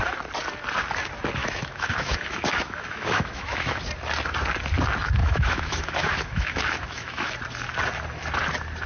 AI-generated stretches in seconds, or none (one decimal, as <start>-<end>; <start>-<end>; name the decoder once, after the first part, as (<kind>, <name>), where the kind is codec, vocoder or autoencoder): 1.4-3.8 (autoencoder, DAC-VAE); 5.2-7.3